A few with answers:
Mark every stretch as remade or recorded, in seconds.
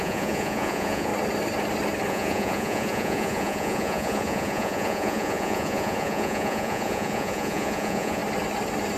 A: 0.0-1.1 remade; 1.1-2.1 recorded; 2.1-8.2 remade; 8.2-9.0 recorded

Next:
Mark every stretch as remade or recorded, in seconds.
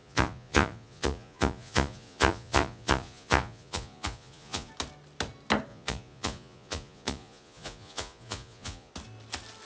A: 0.0-4.7 remade; 4.7-5.7 recorded; 5.7-8.9 remade; 8.9-9.7 recorded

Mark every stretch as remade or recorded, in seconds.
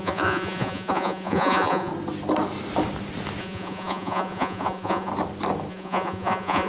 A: 0.0-1.9 remade; 1.9-3.4 recorded; 3.4-5.1 remade; 5.1-5.7 recorded; 5.7-6.7 remade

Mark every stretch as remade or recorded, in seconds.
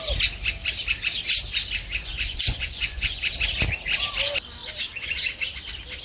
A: 0.0-2.0 recorded; 2.0-3.3 remade; 3.3-6.0 recorded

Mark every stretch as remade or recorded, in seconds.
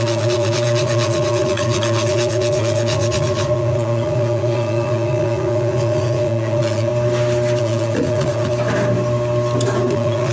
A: 0.0-6.9 remade; 6.9-7.6 recorded; 7.6-8.5 remade; 8.5-9.9 recorded; 9.9-10.3 remade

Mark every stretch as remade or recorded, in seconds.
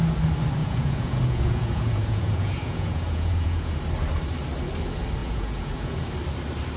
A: 0.0-0.6 recorded; 0.6-3.7 remade; 3.7-5.2 recorded; 5.2-6.1 remade; 6.1-6.8 recorded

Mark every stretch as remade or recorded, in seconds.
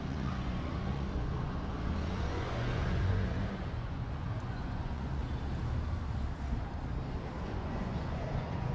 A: 0.0-5.2 remade; 5.2-7.4 recorded; 7.4-8.7 remade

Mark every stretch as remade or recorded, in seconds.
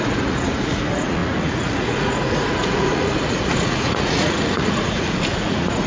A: 0.0-5.9 remade